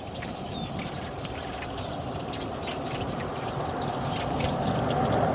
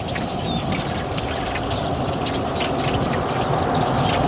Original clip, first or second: second